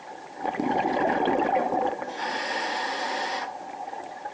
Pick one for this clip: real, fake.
real